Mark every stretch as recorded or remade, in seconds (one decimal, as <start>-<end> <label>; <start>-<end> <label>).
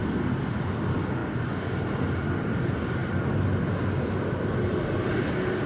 0.0-5.7 recorded